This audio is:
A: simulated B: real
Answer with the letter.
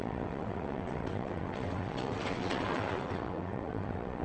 A